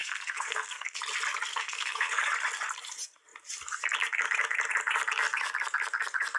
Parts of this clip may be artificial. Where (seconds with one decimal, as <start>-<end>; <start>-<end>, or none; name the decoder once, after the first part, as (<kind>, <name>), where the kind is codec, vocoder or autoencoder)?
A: 0.0-1.0 (codec, SNAC); 1.5-2.2